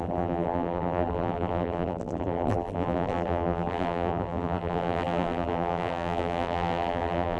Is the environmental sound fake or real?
fake